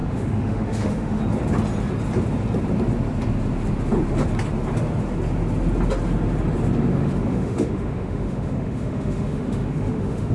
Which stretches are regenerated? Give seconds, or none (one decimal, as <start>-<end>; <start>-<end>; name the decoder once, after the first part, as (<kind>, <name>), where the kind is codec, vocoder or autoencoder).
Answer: 0.0-1.2 (autoencoder, DAC-VAE); 6.9-10.3